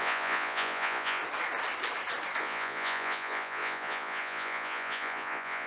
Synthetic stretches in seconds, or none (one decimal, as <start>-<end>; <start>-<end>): 0.0-1.2; 2.4-5.7